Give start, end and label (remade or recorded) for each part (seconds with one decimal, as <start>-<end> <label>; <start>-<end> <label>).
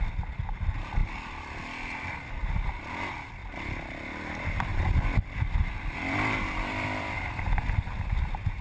0.0-3.4 recorded; 3.4-4.0 remade; 4.0-4.7 recorded; 4.7-7.6 remade; 7.6-8.6 recorded